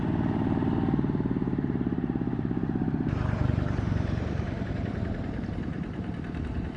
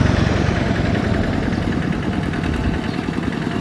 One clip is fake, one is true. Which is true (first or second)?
second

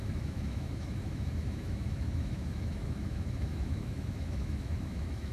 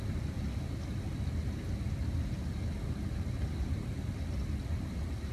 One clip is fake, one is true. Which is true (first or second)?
second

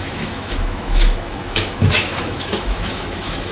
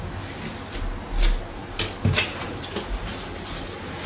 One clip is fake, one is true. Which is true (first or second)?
second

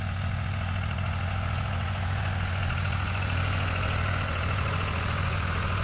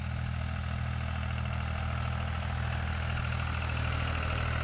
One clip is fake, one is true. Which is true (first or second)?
second